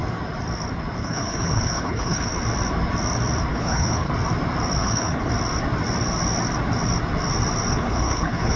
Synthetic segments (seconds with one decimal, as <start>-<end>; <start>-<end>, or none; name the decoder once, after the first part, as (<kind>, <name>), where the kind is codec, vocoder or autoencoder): 1.0-2.3 (codec, HILCodec); 3.5-4.1; 4.8-5.3; 7.7-8.6